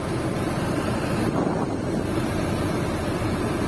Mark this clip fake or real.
fake